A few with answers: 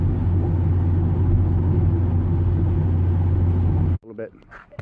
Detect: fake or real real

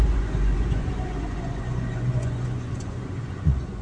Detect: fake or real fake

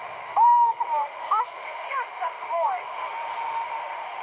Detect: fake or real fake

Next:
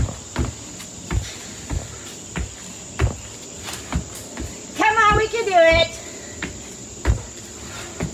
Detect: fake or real real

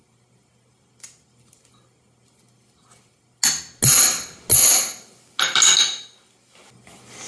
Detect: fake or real real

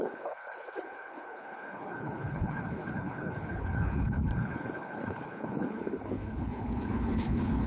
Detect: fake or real fake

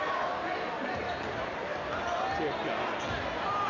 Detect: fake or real real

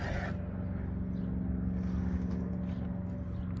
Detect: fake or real real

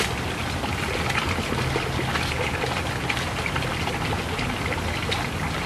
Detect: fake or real real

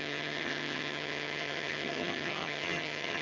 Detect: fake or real fake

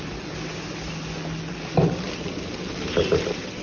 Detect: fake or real real